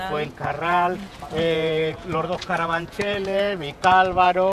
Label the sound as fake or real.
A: fake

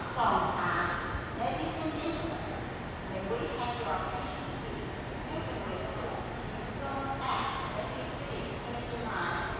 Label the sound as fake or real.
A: real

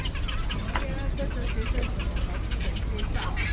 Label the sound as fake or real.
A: real